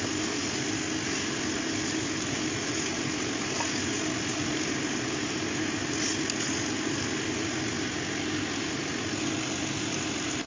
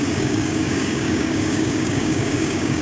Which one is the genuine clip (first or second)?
first